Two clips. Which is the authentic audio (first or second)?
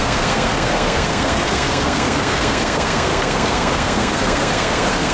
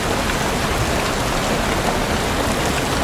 second